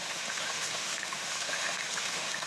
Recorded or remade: remade